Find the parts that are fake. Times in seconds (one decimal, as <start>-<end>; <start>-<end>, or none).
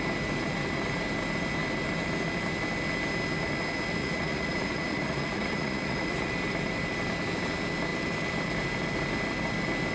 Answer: 4.0-6.3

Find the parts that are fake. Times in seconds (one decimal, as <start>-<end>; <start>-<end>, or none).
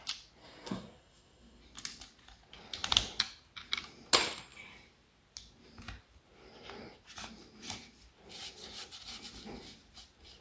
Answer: 0.4-1.6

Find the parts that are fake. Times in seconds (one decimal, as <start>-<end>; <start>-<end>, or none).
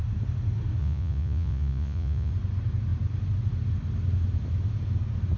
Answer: 0.8-2.3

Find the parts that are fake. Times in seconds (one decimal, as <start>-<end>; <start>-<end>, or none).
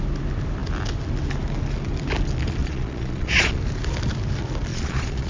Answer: 2.6-3.6; 4.7-5.3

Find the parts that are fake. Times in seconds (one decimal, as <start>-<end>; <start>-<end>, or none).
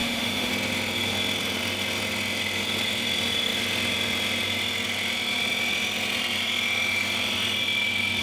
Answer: 0.0-0.5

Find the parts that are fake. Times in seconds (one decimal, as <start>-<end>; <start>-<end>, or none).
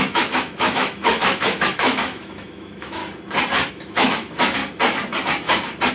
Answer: 0.0-3.0; 3.7-4.6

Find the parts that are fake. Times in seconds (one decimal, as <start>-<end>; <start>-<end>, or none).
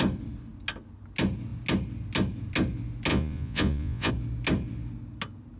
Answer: 3.1-4.1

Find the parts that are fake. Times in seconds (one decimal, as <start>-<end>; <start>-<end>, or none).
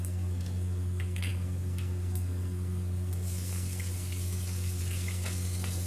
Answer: 0.0-5.9